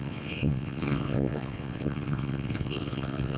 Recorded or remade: remade